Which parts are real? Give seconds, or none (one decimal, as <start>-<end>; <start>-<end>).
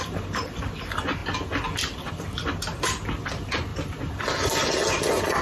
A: 0.0-5.4